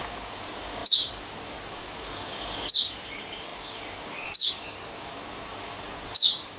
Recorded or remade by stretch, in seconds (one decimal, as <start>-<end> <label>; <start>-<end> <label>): 0.0-6.6 remade